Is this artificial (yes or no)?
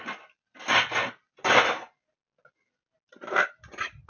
no